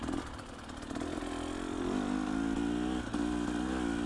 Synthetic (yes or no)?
no